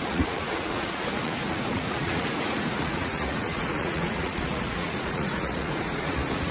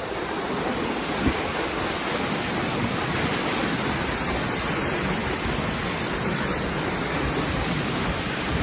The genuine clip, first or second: second